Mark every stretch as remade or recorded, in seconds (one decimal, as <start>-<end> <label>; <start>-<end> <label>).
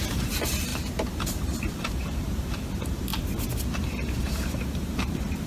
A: 0.0-3.1 remade; 3.1-4.2 recorded; 4.2-5.5 remade